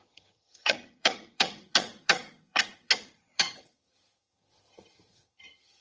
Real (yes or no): no